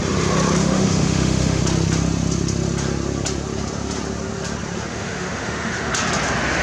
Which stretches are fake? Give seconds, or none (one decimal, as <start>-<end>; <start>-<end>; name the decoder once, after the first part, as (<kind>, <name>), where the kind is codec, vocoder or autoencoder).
0.6-1.6 (autoencoder, DAC-VAE); 4.9-5.9